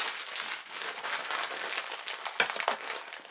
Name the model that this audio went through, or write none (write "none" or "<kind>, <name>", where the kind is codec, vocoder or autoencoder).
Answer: none